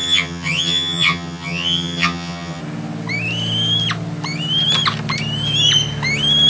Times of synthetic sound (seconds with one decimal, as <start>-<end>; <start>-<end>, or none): 0.0-2.6